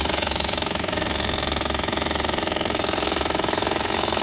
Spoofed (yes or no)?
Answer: yes